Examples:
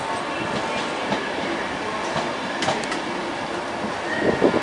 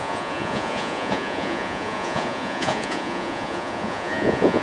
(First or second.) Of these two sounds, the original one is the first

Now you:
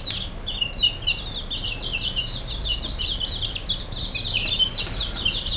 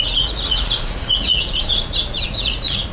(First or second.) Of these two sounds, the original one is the first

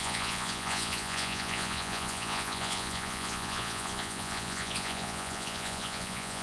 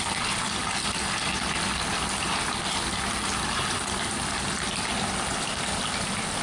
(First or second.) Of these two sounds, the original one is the second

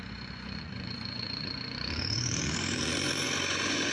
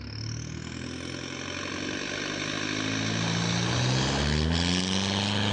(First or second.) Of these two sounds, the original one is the second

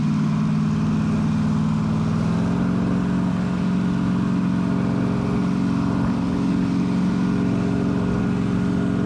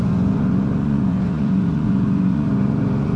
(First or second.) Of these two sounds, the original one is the first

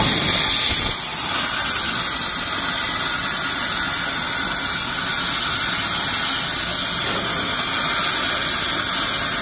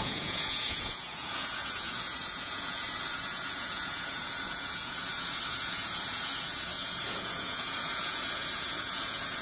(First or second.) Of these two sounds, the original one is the first